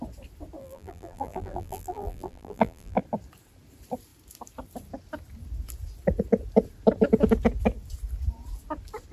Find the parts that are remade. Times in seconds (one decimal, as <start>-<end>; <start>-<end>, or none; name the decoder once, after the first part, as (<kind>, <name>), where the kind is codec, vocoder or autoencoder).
0.6-3.0 (vocoder, BigVGAN v2)